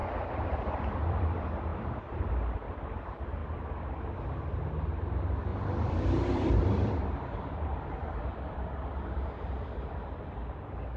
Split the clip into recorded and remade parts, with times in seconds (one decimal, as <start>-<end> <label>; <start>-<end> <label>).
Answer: 0.0-1.2 remade; 1.2-1.7 recorded; 1.7-2.3 remade; 2.3-5.5 recorded; 5.5-9.9 remade; 9.9-11.0 recorded